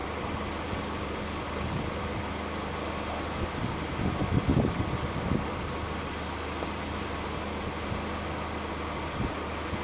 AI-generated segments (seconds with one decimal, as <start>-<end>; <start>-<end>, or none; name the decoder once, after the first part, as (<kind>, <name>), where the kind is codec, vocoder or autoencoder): 0.0-2.0 (vocoder, BigVGAN v2); 4.5-6.1

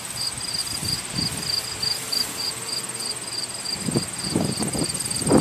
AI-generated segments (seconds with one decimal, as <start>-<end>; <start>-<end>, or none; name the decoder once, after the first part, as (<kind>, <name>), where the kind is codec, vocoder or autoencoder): 0.6-3.8 (vocoder, BigVGAN v2)